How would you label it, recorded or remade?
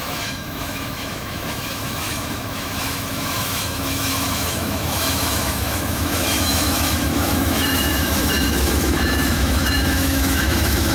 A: remade